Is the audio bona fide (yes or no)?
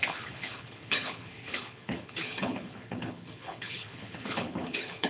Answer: no